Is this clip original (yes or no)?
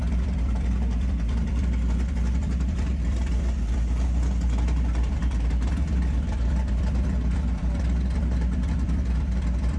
no